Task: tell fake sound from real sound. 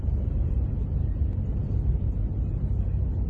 real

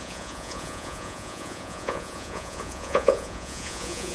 fake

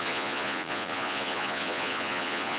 fake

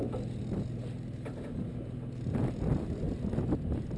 real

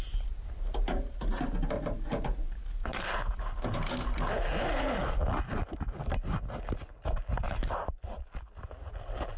real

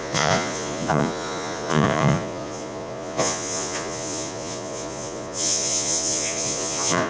fake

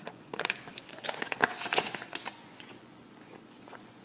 fake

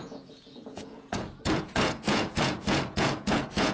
fake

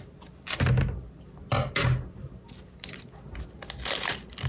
real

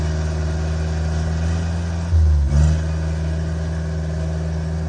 real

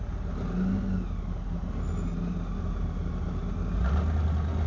real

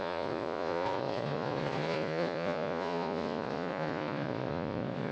fake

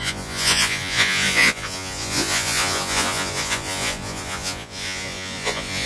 fake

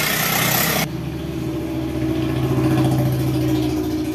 real